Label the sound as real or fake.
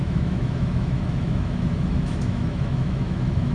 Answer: fake